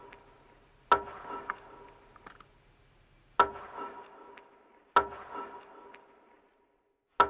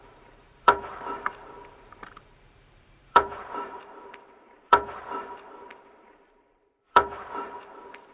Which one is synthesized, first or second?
second